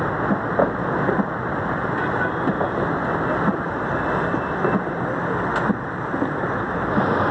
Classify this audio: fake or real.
real